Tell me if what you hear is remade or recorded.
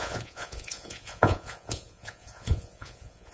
remade